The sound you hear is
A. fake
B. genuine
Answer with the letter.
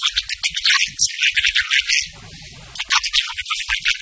B